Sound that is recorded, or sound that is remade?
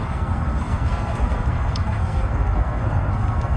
remade